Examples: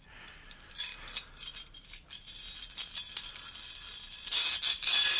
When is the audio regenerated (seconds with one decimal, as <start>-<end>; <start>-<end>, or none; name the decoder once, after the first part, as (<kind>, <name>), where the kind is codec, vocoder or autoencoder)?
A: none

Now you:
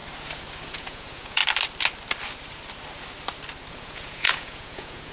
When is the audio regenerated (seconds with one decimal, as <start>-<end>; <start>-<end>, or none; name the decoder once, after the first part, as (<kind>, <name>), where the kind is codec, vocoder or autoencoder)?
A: 0.7-1.4 (vocoder, Vocos); 3.7-5.1

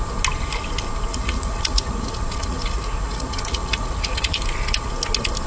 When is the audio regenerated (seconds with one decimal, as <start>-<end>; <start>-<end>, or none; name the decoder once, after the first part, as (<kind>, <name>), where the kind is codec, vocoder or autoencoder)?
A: 1.1-4.4 (vocoder, Vocos)